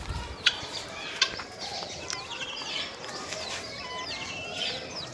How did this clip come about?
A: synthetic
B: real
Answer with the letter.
B